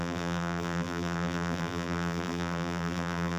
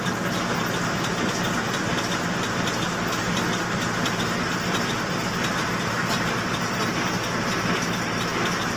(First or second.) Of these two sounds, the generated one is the first